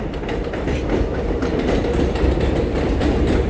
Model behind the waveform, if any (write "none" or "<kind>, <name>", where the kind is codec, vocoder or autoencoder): none